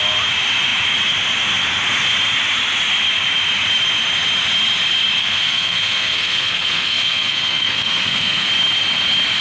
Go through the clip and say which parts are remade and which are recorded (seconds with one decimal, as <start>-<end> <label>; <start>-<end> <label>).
0.0-5.2 recorded; 5.2-8.5 remade; 8.5-9.4 recorded